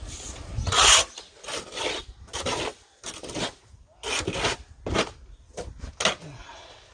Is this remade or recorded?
recorded